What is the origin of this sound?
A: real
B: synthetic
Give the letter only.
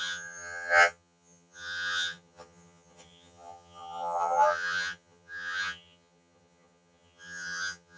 B